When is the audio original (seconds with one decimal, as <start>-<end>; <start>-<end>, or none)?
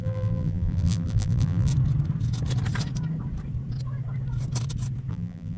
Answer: 1.7-5.1